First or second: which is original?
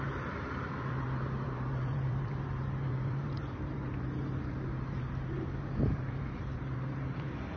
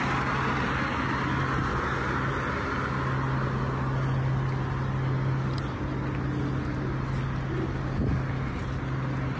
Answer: second